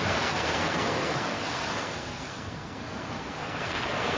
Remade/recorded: remade